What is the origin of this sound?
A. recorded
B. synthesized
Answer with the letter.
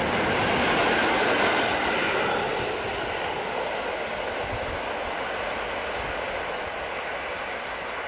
A